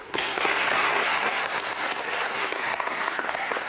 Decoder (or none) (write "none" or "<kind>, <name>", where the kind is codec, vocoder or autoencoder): codec, SNAC